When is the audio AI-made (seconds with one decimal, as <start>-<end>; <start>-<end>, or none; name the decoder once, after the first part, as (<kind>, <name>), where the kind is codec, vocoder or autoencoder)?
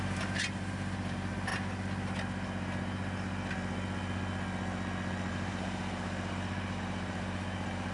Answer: 0.0-1.5 (vocoder, BigVGAN v2); 5.3-7.9